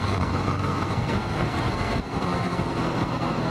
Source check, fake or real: fake